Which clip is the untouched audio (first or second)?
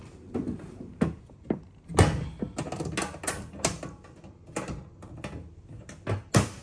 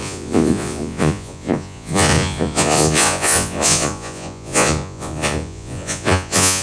first